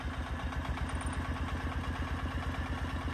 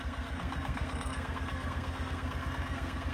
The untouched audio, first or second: first